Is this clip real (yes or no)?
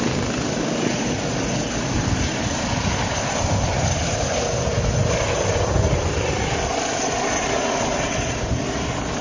yes